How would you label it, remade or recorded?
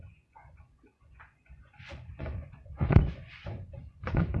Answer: remade